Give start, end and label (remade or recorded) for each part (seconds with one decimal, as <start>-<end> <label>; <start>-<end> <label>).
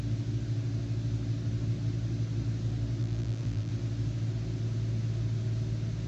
0.0-3.0 recorded; 3.0-3.7 remade; 3.7-6.1 recorded